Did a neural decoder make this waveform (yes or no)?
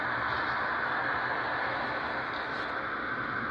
no